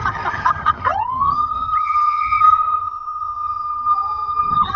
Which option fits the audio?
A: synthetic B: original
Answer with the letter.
A